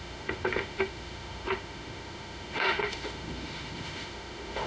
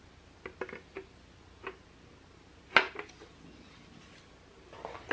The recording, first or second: second